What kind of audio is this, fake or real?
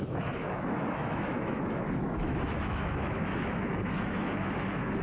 fake